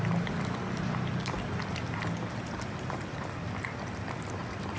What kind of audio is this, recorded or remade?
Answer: recorded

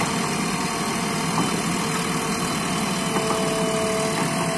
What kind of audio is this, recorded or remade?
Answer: recorded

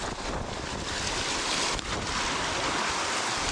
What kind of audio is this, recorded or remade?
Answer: recorded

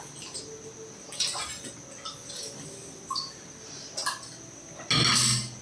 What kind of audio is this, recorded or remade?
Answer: recorded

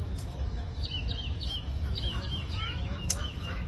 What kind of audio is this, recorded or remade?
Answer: remade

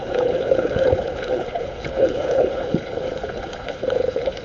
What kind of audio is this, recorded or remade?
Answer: remade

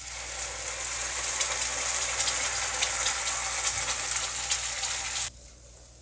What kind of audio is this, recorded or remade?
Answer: recorded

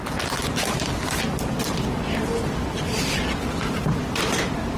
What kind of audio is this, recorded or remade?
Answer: recorded